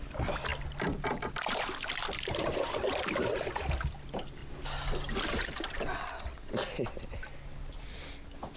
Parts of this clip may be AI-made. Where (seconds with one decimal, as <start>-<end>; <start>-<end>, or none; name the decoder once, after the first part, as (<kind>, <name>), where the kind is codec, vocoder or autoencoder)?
none